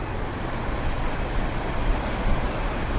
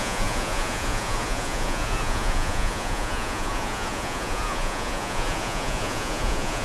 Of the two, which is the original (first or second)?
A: first